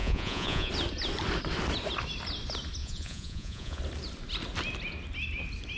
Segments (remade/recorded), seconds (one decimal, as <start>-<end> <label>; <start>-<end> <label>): 0.0-0.7 remade; 0.7-2.8 recorded; 2.8-3.8 remade; 3.8-5.8 recorded

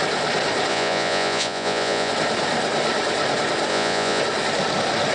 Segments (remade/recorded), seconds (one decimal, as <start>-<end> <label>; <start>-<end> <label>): 0.0-0.7 recorded; 0.7-2.1 remade; 2.1-3.7 recorded; 3.7-4.2 remade; 4.2-5.1 recorded

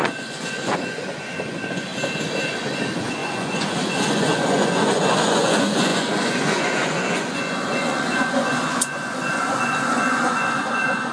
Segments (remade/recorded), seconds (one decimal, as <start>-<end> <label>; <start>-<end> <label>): 0.0-1.9 remade; 1.9-2.5 recorded; 2.5-11.1 remade

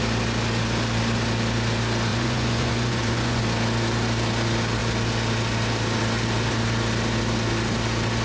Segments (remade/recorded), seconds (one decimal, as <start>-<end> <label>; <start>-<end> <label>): 0.0-2.1 recorded; 2.1-3.4 remade; 3.4-8.2 recorded

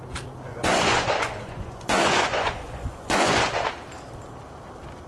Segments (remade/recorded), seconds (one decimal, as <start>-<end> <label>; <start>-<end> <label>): 0.0-0.5 recorded; 0.5-3.6 remade; 3.6-5.1 recorded